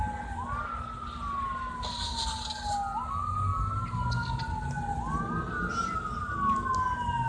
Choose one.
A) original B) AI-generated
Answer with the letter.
A